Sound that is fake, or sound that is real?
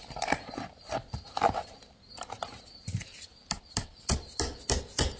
real